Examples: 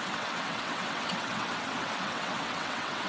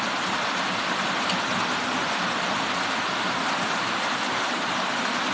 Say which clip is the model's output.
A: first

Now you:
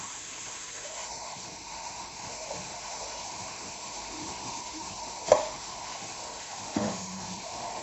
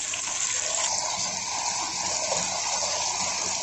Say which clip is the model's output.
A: first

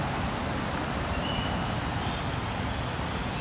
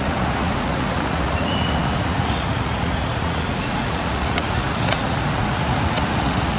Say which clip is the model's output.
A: second